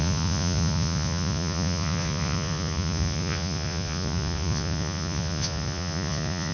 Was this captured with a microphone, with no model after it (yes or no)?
no